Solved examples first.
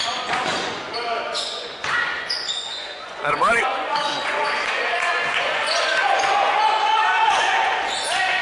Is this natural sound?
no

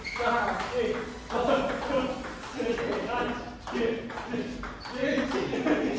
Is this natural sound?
yes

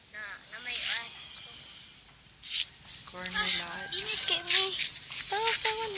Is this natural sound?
yes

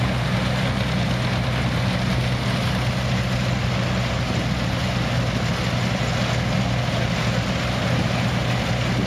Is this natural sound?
yes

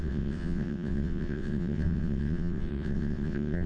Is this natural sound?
no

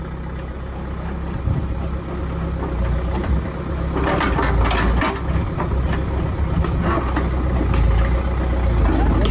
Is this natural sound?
yes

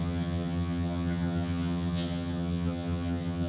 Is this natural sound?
no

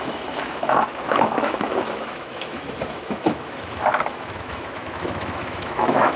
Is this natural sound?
no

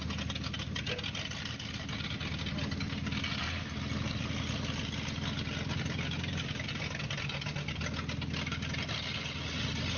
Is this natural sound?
yes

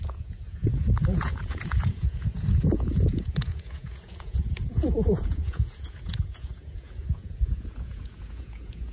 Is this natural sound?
no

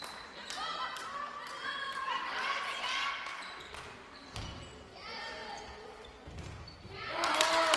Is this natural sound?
yes